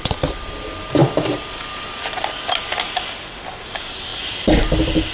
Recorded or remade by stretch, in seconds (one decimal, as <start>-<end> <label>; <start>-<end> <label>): 0.0-1.0 recorded; 1.0-2.8 remade; 2.8-4.1 recorded; 4.1-5.1 remade